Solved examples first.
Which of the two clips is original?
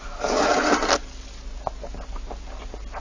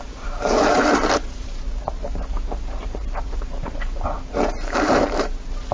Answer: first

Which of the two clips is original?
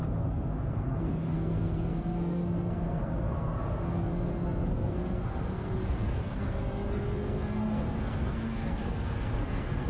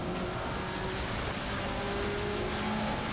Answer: second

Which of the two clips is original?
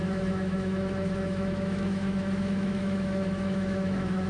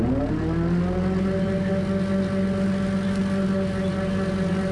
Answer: second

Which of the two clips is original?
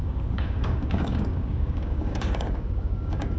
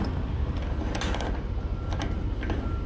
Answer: second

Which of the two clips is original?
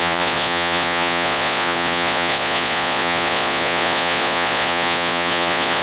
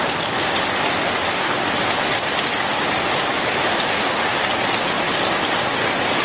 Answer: second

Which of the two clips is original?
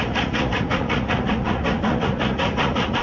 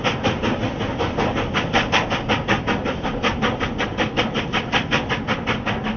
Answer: second